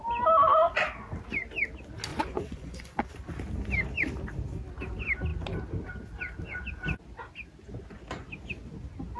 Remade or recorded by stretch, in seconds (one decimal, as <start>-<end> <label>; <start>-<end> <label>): 0.0-2.1 recorded; 2.1-3.0 remade; 3.0-9.2 recorded